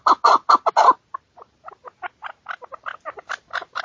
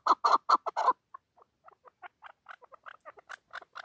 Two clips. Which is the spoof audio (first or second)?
first